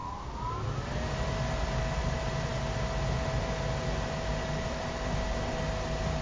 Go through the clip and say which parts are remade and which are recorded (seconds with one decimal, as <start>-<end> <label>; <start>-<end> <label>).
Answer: 0.0-6.2 recorded